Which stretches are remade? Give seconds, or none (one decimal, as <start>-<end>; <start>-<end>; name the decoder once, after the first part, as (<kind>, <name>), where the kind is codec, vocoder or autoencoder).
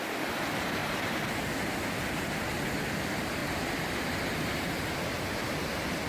none